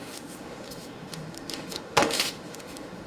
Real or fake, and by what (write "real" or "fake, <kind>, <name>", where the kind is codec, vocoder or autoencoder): fake, autoencoder, DAC-VAE